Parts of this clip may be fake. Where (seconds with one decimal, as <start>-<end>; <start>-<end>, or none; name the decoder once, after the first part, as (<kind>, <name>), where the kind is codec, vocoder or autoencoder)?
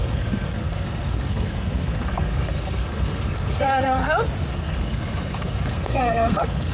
0.0-4.0 (codec, SNAC); 4.5-6.7